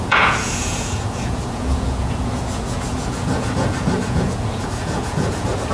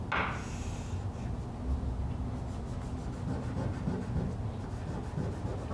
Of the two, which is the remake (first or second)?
first